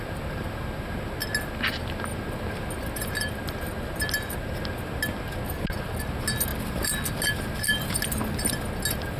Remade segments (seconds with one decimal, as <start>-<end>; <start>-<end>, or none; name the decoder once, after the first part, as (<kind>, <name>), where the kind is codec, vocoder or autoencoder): none

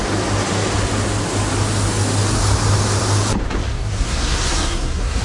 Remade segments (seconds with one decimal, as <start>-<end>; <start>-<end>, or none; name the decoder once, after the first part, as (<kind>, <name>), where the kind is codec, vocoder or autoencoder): 3.7-5.2 (codec, SNAC)

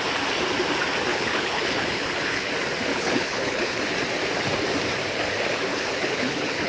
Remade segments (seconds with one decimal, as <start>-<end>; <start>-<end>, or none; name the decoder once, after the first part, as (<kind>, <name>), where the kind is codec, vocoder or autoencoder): 1.1-2.5 (codec, HILCodec); 2.9-3.8; 5.7-6.7